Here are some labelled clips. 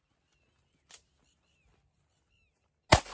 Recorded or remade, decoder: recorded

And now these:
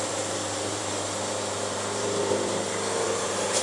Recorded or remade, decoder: remade, vocoder, BigVGAN v2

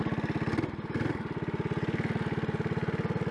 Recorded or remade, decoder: recorded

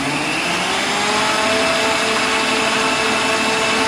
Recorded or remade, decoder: recorded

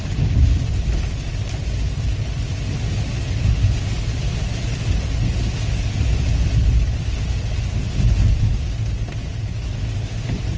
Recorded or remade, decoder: recorded